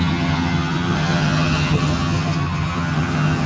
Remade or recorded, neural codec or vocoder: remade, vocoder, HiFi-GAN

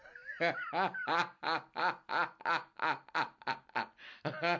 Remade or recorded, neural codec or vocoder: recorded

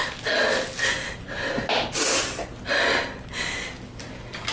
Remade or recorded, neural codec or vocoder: recorded